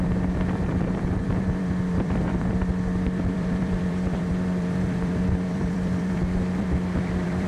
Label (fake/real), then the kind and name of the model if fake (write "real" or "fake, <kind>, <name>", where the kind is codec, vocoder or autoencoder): fake, vocoder, BigVGAN v2